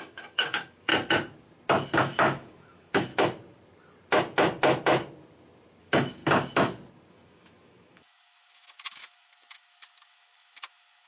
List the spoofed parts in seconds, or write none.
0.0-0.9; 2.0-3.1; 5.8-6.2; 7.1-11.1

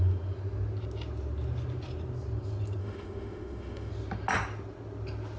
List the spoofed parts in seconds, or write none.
2.8-3.9

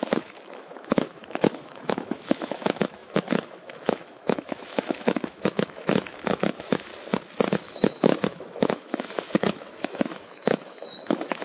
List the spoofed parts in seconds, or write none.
0.0-6.9; 7.5-11.4

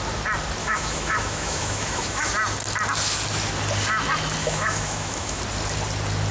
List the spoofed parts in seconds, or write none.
0.6-2.3; 4.4-5.4

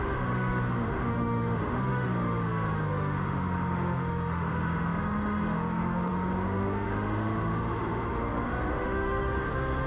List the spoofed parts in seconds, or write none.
0.0-9.9